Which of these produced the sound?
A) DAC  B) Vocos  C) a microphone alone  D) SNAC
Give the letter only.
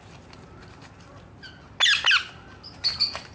C